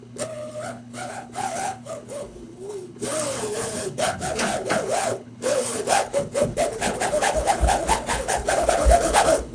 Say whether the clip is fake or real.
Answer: fake